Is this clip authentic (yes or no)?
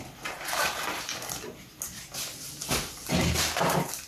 yes